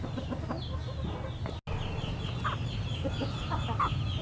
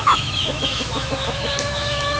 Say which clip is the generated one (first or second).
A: second